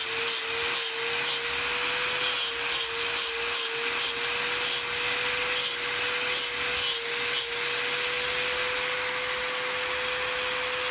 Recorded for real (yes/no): yes